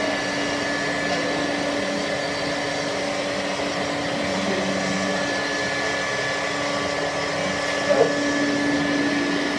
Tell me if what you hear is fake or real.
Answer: real